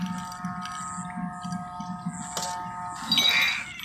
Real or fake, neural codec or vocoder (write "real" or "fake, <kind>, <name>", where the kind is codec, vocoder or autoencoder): real